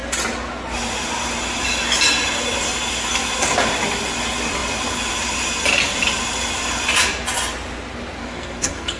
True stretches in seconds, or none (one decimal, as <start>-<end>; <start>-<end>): 0.0-8.2